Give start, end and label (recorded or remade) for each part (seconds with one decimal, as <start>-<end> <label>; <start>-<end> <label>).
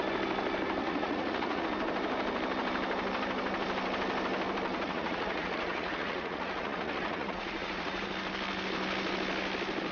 0.0-0.8 recorded; 0.8-1.6 remade; 1.6-4.7 recorded; 4.7-8.1 remade; 8.1-9.9 recorded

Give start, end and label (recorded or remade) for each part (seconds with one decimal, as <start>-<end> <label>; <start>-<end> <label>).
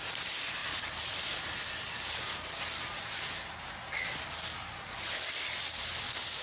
0.0-6.4 recorded